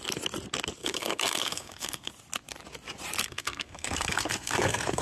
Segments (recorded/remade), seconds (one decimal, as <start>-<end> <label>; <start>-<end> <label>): 0.0-0.8 recorded; 0.8-2.1 remade; 2.1-3.3 recorded; 3.3-5.0 remade